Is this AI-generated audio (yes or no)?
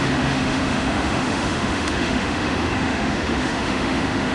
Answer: yes